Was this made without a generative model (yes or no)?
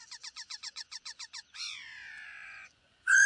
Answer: no